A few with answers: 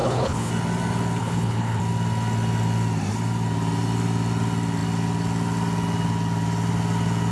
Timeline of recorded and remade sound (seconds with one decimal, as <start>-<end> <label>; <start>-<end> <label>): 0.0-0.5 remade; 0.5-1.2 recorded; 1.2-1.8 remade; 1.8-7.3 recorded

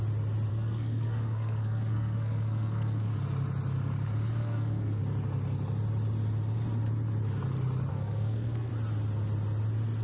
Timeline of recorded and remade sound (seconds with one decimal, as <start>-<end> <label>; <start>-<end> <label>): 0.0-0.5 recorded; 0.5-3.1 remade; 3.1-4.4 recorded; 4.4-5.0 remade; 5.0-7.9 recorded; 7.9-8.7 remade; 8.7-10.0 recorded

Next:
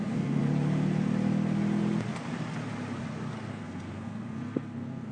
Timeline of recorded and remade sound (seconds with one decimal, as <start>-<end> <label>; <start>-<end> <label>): 0.0-0.4 remade; 0.4-3.5 recorded; 3.5-5.1 remade